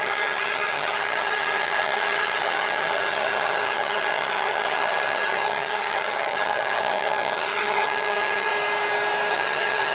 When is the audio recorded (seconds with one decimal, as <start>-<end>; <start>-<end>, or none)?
8.5-9.3